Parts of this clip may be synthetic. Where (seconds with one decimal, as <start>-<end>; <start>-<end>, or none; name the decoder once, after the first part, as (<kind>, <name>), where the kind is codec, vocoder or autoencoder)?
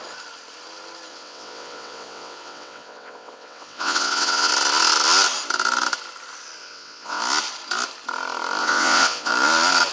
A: 1.1-4.5 (vocoder, WaveNeXt); 6.6-7.2; 8.6-9.3